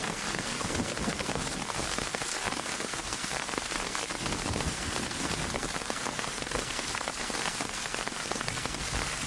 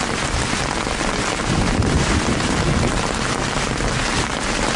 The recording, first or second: second